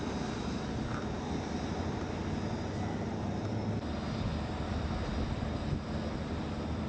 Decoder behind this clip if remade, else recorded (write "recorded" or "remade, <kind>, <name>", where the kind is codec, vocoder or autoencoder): recorded